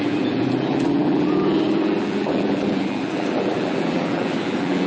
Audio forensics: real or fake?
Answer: fake